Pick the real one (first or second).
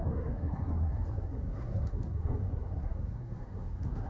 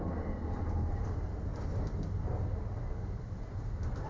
second